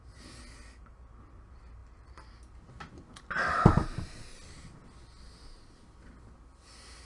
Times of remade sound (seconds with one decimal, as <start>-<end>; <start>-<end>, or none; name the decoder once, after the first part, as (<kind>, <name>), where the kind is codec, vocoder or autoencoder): none